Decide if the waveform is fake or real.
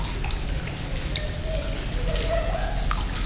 real